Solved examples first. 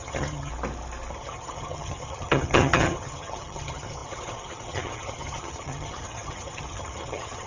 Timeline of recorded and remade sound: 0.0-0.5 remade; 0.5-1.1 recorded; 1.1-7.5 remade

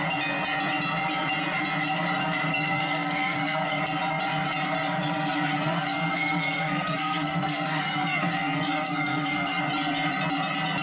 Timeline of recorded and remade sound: 0.0-2.5 recorded; 2.5-3.8 remade; 3.8-5.0 recorded; 5.0-9.6 remade; 9.6-10.8 recorded

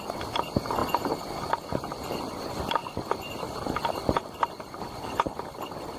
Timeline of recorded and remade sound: 0.0-6.0 recorded